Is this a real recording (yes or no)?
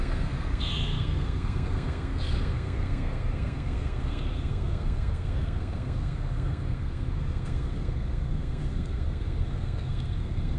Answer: no